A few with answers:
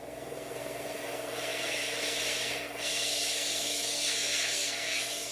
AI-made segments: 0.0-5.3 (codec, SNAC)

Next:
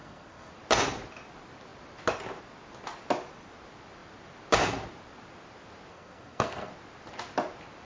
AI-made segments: 0.0-0.5 (codec, SNAC); 5.9-6.7